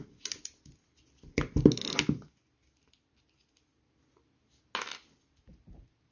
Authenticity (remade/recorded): recorded